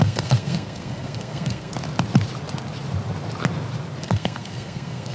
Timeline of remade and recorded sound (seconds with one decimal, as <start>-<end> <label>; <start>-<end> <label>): 0.0-1.7 remade; 1.7-4.0 recorded; 4.0-5.1 remade